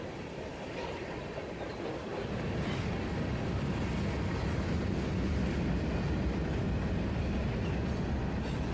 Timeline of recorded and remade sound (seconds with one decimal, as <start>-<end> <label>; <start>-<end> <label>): 0.0-8.7 recorded